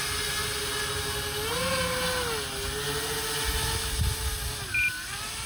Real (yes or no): yes